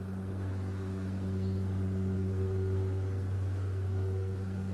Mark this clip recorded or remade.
remade